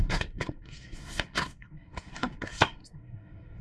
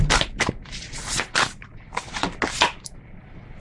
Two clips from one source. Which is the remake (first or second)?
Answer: first